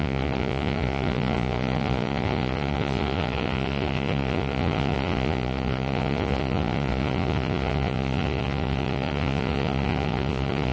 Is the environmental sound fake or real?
fake